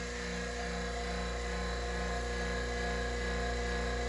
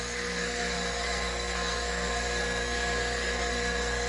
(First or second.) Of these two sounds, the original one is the first